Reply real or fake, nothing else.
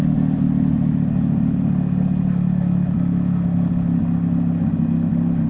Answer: real